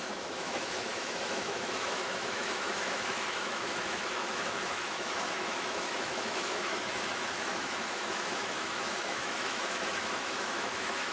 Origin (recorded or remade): remade